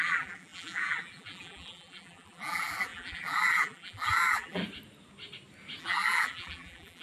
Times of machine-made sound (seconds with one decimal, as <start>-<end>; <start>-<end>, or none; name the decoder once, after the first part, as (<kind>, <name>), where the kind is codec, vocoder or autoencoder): 0.0-4.6 (vocoder, BigVGAN v2); 5.8-7.0